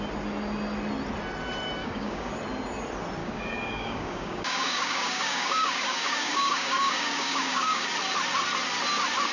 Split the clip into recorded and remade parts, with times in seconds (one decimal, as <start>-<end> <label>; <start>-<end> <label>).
0.0-1.8 recorded; 1.8-2.3 remade; 2.3-3.2 recorded; 3.2-7.9 remade; 7.9-9.3 recorded